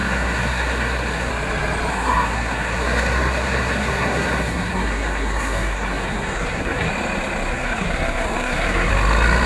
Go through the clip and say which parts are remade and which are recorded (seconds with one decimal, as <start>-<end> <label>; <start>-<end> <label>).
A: 0.0-1.3 remade; 1.3-1.9 recorded; 1.9-6.9 remade; 6.9-7.5 recorded; 7.5-8.9 remade; 8.9-9.5 recorded